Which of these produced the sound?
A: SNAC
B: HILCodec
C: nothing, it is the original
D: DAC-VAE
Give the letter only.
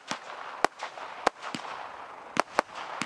C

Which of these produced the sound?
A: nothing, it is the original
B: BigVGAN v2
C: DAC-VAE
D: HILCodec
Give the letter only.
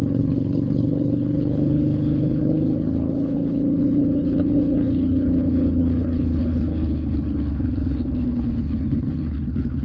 D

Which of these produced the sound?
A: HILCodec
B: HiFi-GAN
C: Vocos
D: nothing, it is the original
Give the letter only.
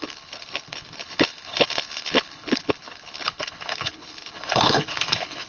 A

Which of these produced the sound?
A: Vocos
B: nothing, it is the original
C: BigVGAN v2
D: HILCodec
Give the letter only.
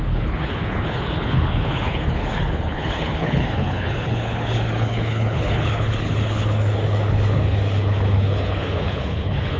D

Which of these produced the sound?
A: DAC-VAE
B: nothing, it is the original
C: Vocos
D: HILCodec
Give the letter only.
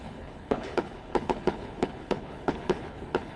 D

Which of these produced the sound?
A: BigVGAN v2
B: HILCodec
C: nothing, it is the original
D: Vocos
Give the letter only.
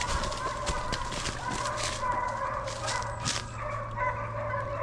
C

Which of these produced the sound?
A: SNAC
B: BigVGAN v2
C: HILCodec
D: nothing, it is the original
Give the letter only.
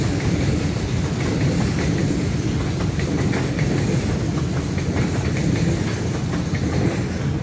D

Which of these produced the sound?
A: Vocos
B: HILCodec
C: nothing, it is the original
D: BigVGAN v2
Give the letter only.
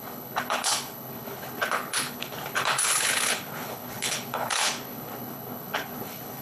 B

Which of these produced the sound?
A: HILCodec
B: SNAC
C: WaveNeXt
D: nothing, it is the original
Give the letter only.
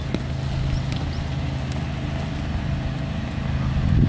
D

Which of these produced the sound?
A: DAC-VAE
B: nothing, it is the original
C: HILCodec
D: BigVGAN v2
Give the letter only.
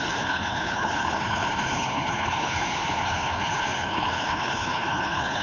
C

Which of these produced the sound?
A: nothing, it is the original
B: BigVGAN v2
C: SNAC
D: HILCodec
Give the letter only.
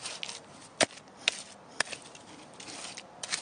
A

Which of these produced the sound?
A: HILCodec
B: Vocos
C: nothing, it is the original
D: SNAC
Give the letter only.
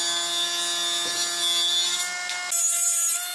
C